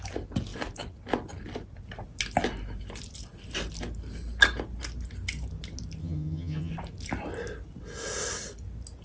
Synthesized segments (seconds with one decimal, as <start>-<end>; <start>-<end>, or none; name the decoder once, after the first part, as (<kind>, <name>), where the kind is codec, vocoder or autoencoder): 6.0-6.7 (vocoder, HiFi-GAN)